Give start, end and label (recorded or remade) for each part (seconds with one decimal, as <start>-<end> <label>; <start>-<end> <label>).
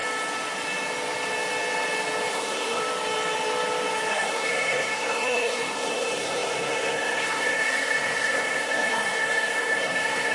0.0-2.3 recorded; 2.3-2.8 remade; 2.8-4.1 recorded; 4.1-10.3 remade